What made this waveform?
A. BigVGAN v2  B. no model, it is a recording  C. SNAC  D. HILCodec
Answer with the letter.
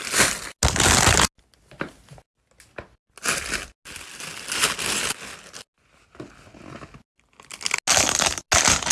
B